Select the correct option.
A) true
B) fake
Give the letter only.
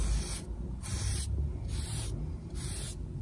A